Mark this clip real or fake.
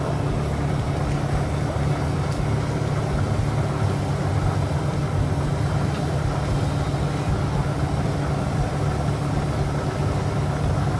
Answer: real